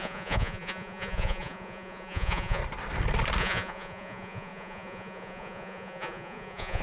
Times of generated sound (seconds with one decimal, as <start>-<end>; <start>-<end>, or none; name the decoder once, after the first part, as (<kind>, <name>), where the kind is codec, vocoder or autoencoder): 0.0-2.6 (vocoder, Vocos); 3.4-6.8